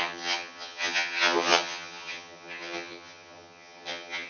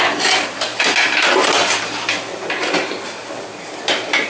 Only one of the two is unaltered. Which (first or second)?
second